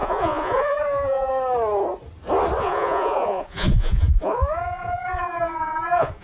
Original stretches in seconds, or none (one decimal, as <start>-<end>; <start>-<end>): 1.3-2.6